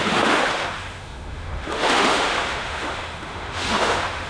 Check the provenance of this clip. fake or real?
fake